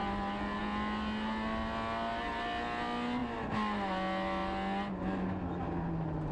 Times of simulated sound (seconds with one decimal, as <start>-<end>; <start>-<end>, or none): none